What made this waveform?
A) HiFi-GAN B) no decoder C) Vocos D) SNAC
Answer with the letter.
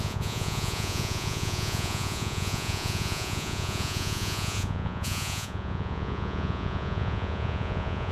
C